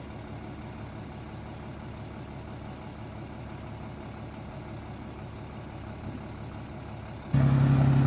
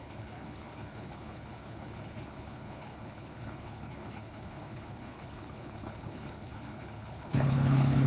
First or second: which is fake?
second